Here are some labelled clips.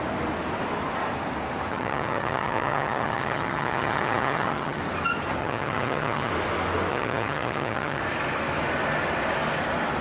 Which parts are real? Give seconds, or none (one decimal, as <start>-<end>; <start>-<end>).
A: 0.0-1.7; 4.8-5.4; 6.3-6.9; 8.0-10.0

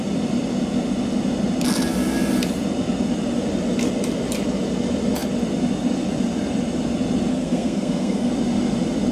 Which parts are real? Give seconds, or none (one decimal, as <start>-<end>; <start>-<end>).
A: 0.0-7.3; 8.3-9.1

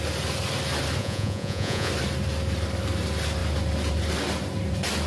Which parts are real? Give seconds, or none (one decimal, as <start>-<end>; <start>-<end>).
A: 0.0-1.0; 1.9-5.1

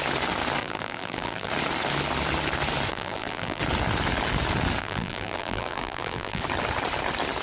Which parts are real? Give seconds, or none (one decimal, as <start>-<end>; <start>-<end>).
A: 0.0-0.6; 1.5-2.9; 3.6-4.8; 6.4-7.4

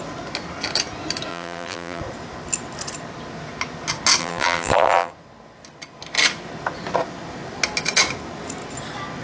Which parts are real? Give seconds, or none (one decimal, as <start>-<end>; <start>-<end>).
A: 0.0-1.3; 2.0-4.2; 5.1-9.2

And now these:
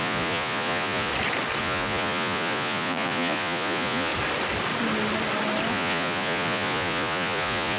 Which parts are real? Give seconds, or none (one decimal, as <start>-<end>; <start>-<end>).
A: 1.1-1.6; 4.1-5.7

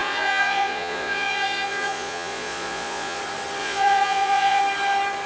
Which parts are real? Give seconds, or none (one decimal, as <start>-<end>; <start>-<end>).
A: 3.2-3.6; 4.6-5.3